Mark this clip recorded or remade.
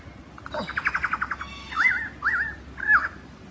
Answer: recorded